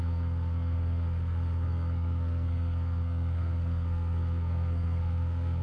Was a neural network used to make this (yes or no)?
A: yes